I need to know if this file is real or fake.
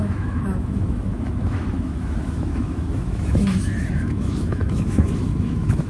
fake